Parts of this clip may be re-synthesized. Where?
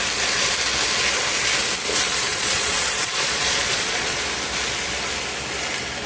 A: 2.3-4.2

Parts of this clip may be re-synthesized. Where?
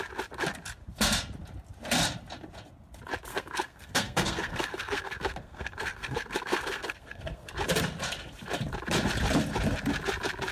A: 3.3-7.5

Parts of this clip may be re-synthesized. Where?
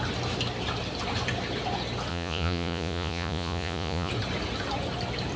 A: 2.1-4.1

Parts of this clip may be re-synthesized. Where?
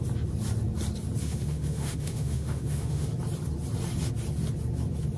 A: 1.2-3.1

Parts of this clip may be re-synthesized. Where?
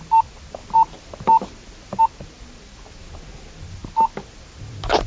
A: none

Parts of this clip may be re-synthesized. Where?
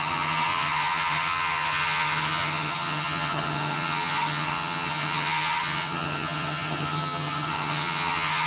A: 0.0-8.5